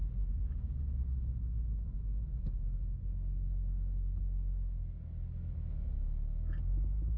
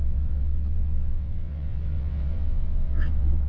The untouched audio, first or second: first